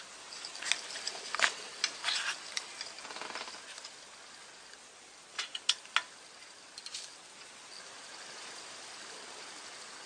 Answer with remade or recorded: recorded